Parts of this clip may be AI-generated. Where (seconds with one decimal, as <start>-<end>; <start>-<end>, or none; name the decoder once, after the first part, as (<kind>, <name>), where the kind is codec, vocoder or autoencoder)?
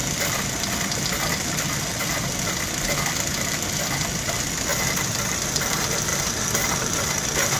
2.0-6.1 (vocoder, BigVGAN v2); 6.8-7.6